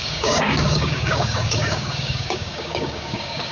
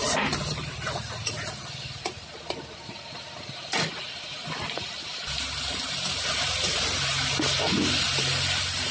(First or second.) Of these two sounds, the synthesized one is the first